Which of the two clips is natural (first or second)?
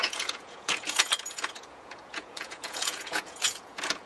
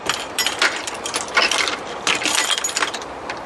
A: second